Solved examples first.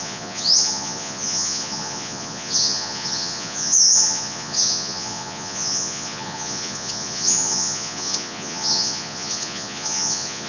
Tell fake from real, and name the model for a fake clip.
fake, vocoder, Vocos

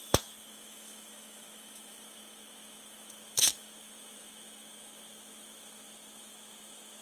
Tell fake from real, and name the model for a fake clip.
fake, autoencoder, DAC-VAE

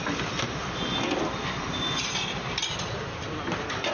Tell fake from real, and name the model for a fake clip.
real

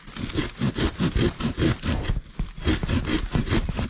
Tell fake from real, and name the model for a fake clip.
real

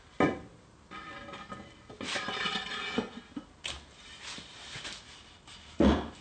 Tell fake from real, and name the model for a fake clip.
real